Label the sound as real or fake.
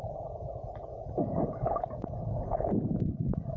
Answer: fake